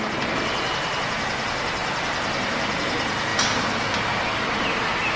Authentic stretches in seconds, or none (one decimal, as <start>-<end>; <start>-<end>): 0.0-5.2